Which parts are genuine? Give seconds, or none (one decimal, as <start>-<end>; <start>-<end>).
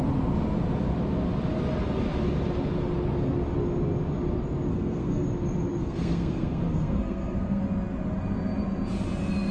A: 0.0-4.7; 5.2-5.8; 7.6-9.5